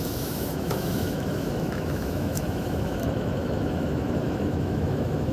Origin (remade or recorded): remade